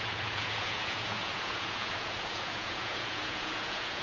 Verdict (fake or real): fake